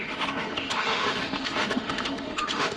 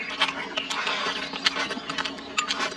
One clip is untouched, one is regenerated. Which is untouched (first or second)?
second